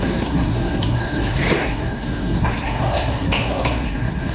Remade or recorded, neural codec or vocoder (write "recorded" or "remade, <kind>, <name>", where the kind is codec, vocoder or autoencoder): remade, codec, SNAC